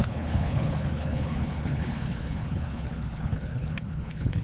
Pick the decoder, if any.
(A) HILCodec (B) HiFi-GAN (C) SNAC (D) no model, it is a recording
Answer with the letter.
A